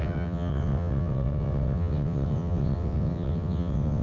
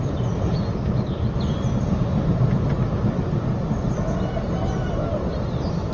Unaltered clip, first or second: second